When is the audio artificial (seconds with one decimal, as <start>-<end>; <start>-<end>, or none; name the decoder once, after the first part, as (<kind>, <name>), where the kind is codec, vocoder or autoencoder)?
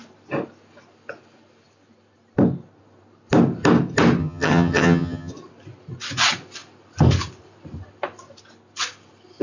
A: 4.2-5.3 (vocoder, HiFi-GAN)